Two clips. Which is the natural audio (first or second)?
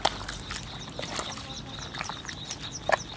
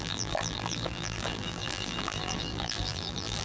first